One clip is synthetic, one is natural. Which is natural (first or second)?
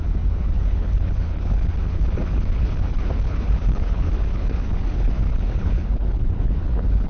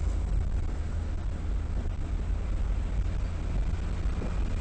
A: second